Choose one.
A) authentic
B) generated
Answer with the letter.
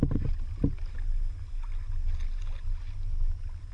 A